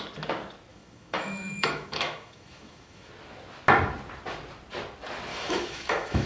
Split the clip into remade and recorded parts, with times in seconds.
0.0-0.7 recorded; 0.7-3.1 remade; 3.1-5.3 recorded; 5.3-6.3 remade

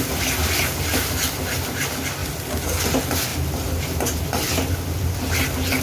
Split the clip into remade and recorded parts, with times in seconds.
0.0-5.8 recorded

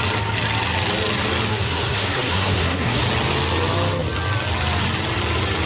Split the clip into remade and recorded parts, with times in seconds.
0.0-1.5 recorded; 1.5-3.0 remade; 3.0-5.7 recorded

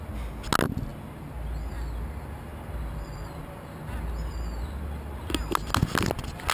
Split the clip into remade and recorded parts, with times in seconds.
0.0-6.5 recorded

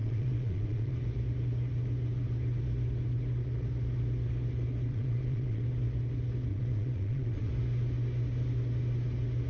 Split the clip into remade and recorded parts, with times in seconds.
0.0-0.9 remade; 0.9-4.9 recorded; 4.9-5.6 remade; 5.6-6.5 recorded; 6.5-7.5 remade; 7.5-9.5 recorded

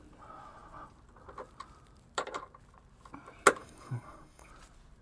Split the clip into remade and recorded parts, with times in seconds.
0.0-3.6 recorded; 3.6-4.5 remade; 4.5-5.0 recorded

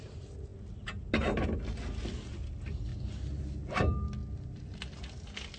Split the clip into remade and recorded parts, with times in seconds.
0.0-2.9 recorded; 2.9-3.4 remade; 3.4-5.6 recorded

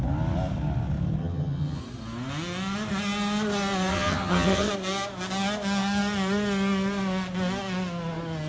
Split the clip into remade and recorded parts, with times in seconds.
0.0-1.2 recorded; 1.2-1.8 remade; 1.8-3.9 recorded; 3.9-4.7 remade; 4.7-8.5 recorded